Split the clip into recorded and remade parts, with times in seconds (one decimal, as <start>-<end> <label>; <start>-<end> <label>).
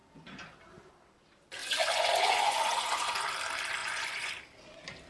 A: 0.0-1.6 recorded; 1.6-3.2 remade; 3.2-3.8 recorded; 3.8-4.3 remade; 4.3-5.1 recorded